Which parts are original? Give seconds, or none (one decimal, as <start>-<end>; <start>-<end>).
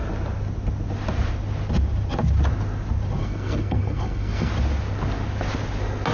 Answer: 0.0-3.2; 4.5-6.1